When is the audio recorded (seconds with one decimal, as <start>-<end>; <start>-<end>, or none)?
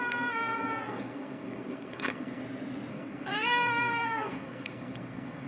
2.4-2.9